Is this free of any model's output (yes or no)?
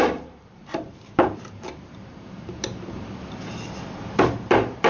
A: no